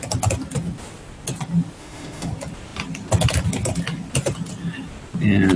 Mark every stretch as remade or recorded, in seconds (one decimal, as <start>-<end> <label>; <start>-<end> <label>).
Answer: 0.0-1.8 recorded; 1.8-2.3 remade; 2.3-5.6 recorded